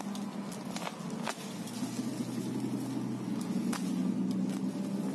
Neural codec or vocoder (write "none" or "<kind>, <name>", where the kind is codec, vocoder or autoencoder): none